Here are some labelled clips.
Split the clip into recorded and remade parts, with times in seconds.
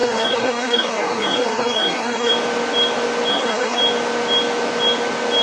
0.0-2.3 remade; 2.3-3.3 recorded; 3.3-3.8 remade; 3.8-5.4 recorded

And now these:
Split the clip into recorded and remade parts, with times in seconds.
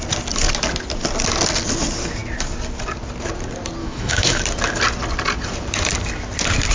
0.0-3.8 recorded; 3.8-4.4 remade; 4.4-6.7 recorded